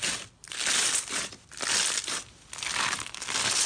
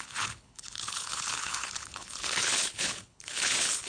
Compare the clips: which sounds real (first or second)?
first